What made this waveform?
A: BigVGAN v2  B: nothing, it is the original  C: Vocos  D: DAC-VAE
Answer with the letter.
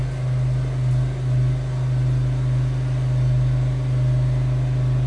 B